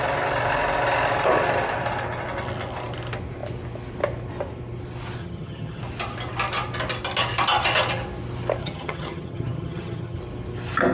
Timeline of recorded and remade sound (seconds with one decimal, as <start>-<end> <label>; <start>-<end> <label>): 0.0-5.2 recorded; 5.2-5.8 remade; 5.8-8.6 recorded; 8.6-10.2 remade; 10.2-10.9 recorded